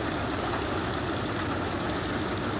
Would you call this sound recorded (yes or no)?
yes